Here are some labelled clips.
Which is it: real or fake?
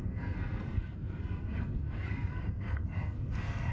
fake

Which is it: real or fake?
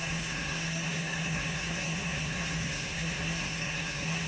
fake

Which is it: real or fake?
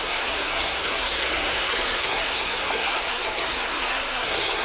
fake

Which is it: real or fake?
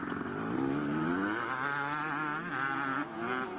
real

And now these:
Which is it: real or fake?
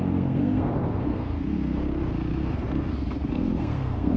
fake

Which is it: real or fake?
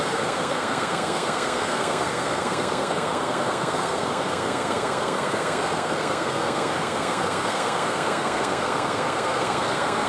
fake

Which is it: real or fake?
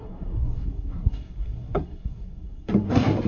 fake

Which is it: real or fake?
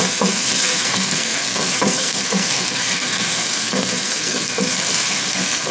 fake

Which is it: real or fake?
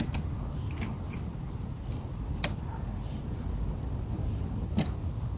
real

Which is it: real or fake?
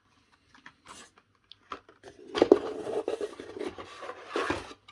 real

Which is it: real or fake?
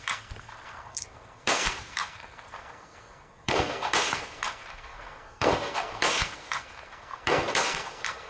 fake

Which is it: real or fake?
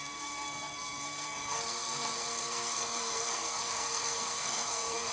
fake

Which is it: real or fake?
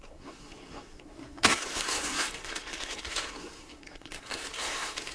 fake